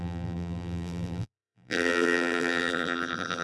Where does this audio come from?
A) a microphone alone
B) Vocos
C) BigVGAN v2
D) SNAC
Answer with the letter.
C